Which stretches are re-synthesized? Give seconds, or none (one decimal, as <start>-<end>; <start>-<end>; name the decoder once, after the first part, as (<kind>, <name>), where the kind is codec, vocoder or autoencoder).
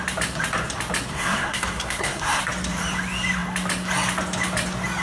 1.1-2.4 (codec, SNAC)